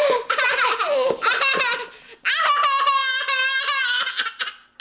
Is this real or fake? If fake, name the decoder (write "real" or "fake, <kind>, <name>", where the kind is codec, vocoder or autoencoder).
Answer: real